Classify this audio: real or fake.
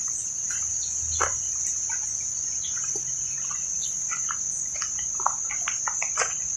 real